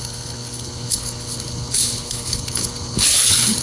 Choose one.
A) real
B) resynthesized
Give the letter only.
B